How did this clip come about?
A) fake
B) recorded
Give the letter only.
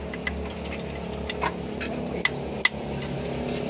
B